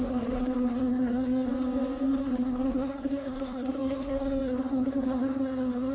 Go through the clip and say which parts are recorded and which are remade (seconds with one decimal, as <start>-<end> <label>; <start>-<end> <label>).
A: 0.0-1.5 remade; 1.5-2.2 recorded; 2.2-5.9 remade